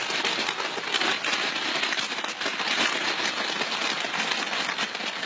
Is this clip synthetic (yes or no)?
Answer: no